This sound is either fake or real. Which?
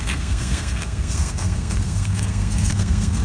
fake